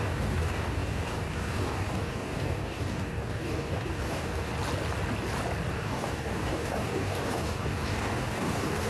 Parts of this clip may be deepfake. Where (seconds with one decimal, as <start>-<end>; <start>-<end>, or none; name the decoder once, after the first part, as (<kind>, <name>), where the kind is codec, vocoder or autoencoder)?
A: 0.0-4.5 (codec, DAC); 5.7-8.9